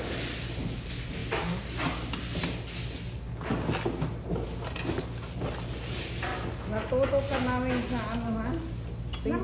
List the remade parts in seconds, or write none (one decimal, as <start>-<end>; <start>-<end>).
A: none